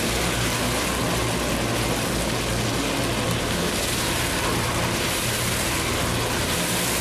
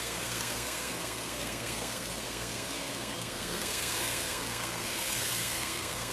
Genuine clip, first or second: first